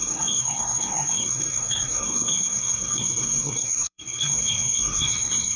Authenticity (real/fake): fake